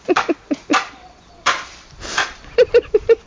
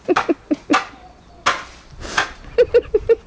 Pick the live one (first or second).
second